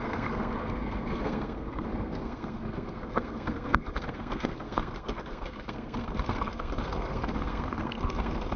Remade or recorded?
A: remade